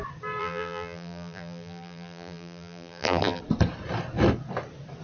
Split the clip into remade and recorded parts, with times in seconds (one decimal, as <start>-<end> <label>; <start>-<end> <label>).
0.0-0.4 recorded; 0.4-3.4 remade; 3.4-5.0 recorded